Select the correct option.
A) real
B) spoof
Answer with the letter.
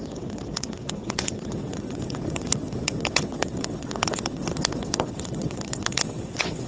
B